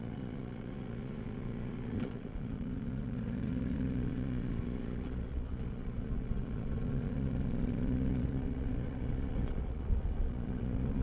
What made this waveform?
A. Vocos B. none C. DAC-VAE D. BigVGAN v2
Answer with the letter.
A